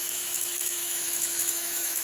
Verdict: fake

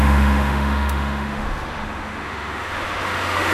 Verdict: fake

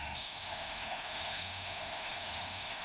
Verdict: fake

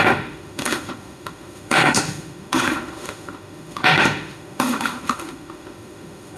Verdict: fake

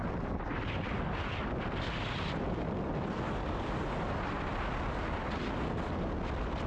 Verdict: real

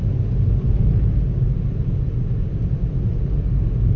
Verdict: real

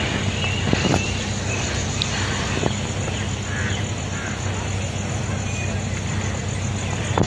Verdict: real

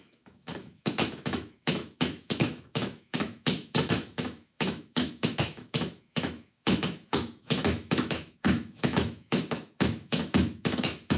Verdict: fake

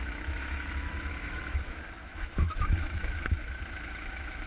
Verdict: fake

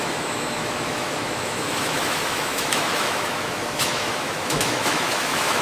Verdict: fake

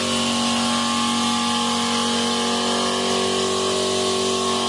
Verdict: real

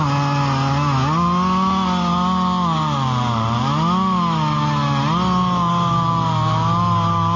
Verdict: real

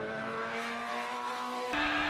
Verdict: fake